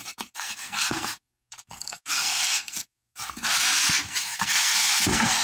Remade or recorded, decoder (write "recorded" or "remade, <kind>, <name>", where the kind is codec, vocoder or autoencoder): remade, codec, SNAC